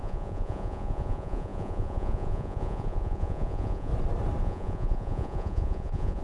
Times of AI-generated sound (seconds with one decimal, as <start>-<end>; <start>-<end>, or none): 0.0-3.9; 4.4-6.2